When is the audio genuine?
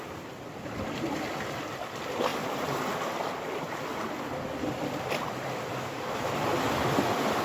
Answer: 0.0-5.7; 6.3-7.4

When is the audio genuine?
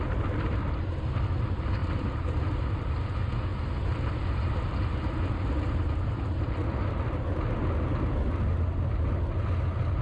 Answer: 0.0-1.8; 2.6-10.0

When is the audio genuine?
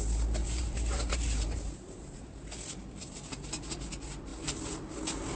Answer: 0.0-0.4; 2.2-5.4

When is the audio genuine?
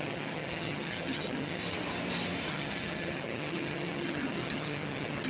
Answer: 1.6-2.5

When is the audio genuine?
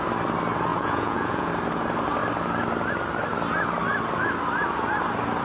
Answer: 0.0-0.7; 1.5-5.4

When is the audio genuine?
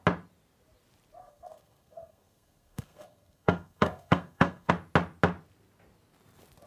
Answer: 0.0-1.2; 4.7-6.7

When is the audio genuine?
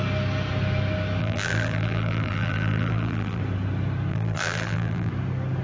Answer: 0.0-1.2; 3.4-4.1; 5.1-5.6